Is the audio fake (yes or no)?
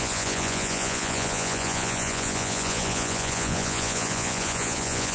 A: yes